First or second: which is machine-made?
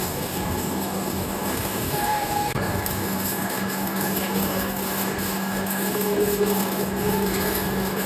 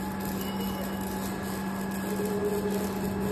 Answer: first